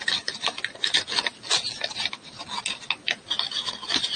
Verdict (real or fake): real